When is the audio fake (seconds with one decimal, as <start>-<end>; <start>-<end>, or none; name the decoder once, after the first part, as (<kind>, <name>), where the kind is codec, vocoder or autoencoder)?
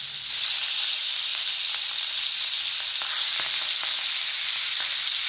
none